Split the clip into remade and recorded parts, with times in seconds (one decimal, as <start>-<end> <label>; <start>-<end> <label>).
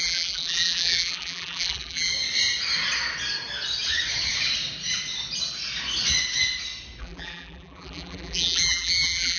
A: 0.0-2.1 remade; 2.1-7.0 recorded; 7.0-9.4 remade